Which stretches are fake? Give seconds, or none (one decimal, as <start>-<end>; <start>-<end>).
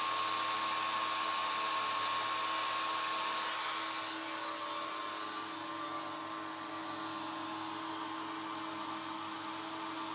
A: none